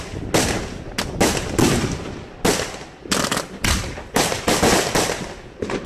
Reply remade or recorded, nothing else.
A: recorded